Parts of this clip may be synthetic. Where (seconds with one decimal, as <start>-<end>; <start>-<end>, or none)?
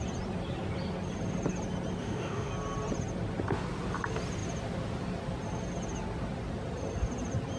2.0-2.5